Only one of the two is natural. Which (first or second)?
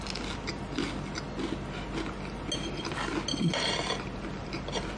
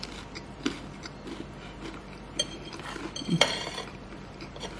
first